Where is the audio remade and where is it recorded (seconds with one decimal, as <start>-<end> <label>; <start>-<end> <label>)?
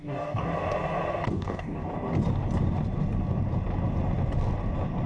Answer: 0.0-0.5 remade; 0.5-1.3 recorded; 1.3-1.8 remade; 1.8-5.1 recorded